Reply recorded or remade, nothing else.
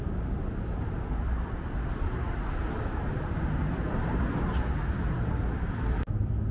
recorded